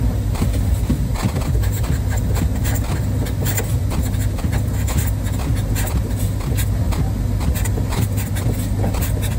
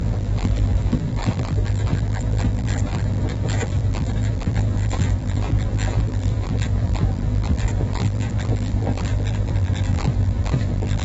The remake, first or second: second